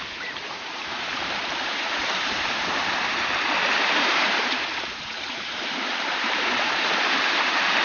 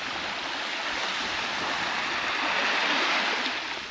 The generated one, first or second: first